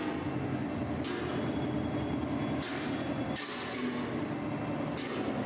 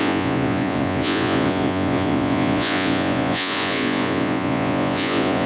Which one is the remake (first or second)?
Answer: second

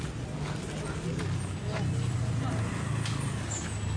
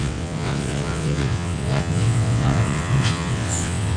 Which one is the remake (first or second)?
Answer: second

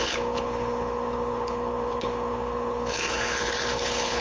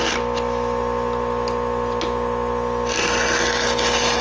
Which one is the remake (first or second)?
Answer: first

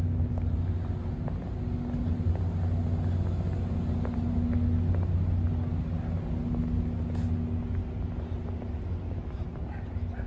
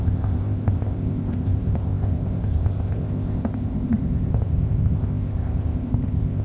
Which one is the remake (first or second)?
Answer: second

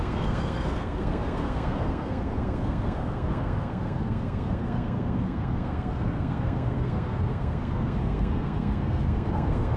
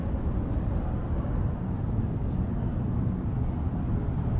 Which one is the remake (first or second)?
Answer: first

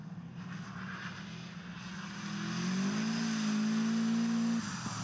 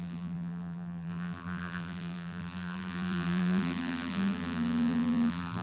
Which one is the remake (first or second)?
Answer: second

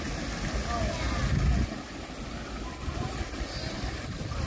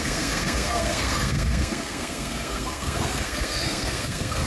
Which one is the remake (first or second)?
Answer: second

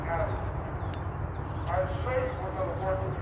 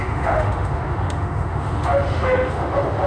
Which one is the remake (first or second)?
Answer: second